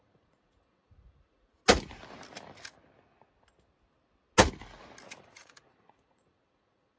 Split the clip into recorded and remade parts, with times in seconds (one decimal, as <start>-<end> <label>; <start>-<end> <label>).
0.0-1.6 remade; 1.6-5.2 recorded; 5.2-7.0 remade